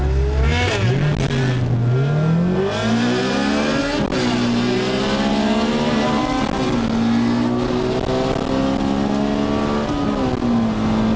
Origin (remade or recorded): recorded